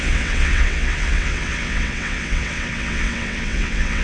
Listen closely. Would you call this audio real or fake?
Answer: fake